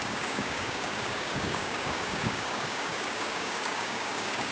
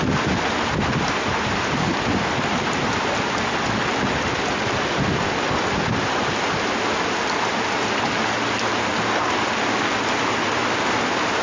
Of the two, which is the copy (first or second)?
first